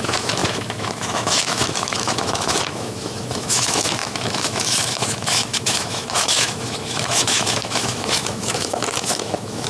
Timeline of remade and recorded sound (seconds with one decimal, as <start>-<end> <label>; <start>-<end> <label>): 0.0-9.7 remade